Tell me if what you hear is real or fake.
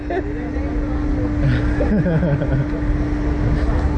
real